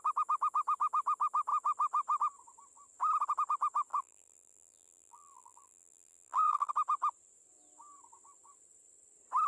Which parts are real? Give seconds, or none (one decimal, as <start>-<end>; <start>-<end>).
0.0-3.9; 6.7-9.5